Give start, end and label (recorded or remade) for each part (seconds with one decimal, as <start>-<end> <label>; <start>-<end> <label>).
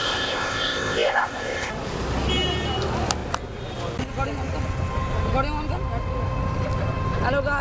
0.0-1.7 remade; 1.7-7.6 recorded